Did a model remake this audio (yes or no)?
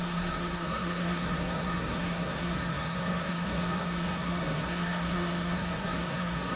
yes